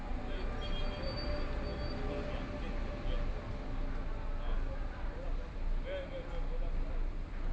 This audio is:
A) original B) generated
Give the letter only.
A